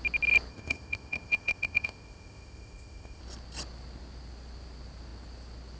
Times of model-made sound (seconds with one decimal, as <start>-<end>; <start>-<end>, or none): 0.5-3.2